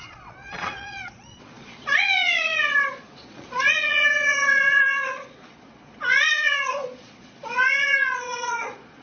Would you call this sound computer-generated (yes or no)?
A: yes